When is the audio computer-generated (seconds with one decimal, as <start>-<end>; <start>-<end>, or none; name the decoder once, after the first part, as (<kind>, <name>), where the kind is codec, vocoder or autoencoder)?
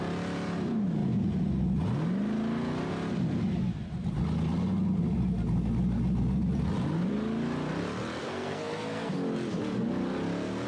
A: 8.2-9.1 (codec, SNAC)